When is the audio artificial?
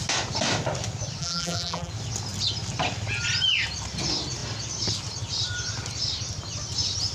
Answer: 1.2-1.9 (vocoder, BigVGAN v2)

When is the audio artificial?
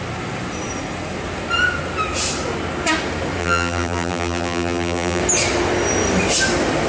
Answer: 3.4-5.2 (vocoder, BigVGAN v2)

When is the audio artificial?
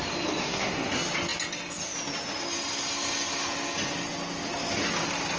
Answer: 0.4-0.9 (codec, SNAC)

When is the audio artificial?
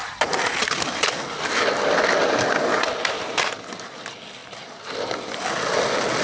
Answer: none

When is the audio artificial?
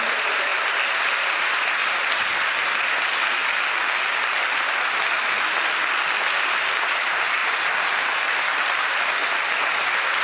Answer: 0.0-0.5 (vocoder, BigVGAN v2); 1.3-1.8; 6.4-7.4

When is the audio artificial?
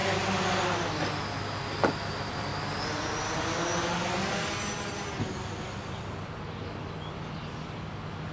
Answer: none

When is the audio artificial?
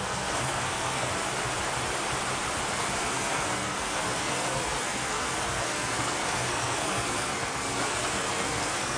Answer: 0.0-1.1 (codec, SNAC); 2.7-9.0